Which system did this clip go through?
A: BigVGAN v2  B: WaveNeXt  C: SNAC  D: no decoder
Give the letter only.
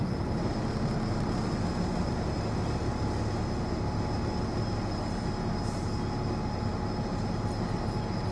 D